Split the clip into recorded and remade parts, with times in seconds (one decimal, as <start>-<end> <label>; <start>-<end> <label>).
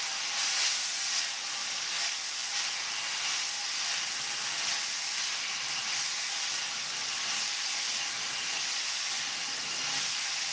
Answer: 0.0-10.5 recorded